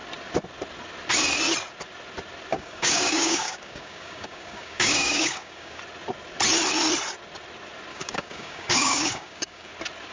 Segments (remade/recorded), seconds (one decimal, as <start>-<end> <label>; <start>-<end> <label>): 0.0-2.5 recorded; 2.5-5.8 remade; 5.8-7.9 recorded; 7.9-9.7 remade; 9.7-10.1 recorded